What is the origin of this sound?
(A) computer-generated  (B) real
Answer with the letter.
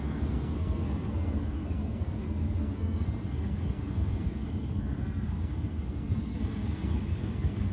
A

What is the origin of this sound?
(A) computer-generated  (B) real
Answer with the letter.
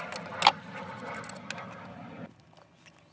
B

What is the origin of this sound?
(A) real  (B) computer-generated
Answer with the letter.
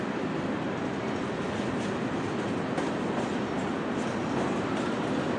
A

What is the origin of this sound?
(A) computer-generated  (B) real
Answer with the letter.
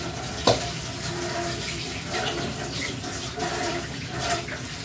A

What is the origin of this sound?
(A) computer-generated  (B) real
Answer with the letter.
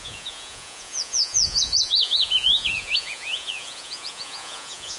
A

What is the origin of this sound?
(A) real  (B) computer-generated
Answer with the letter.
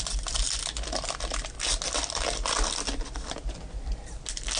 A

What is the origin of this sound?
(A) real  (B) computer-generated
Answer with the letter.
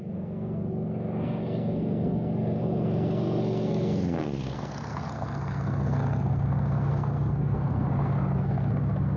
B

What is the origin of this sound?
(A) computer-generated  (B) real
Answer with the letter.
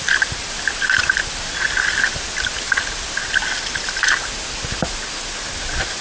B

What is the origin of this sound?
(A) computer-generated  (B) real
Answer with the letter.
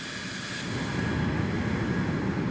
B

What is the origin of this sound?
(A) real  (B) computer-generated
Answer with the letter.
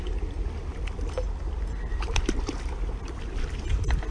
A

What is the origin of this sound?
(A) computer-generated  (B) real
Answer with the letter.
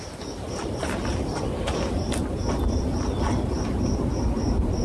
B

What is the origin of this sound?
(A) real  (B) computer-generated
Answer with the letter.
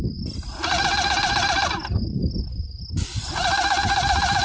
A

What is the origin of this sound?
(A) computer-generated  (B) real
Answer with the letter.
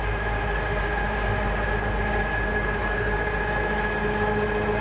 B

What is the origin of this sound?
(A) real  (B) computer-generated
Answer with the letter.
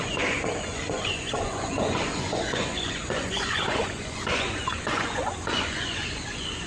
B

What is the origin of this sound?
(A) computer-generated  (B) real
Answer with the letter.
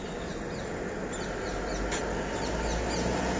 B